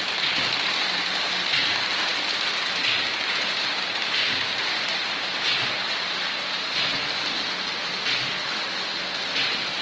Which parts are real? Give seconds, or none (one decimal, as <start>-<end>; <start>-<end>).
0.0-9.8